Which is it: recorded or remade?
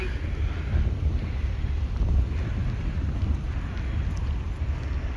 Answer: recorded